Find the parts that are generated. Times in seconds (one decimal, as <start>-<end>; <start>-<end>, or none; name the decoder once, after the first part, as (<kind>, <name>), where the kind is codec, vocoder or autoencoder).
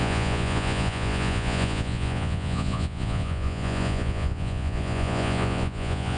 0.0-6.2 (vocoder, Vocos)